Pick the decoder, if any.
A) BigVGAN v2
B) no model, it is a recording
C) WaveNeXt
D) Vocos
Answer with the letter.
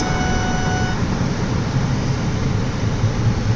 B